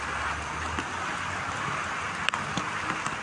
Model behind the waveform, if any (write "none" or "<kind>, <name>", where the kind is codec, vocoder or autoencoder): none